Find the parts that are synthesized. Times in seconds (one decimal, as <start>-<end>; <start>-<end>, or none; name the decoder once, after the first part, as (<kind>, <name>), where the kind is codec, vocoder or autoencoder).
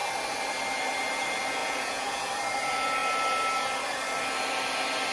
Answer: 1.6-2.3 (vocoder, Vocos)